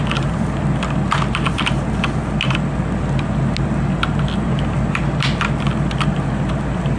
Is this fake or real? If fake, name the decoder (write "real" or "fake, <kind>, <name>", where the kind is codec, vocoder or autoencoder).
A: real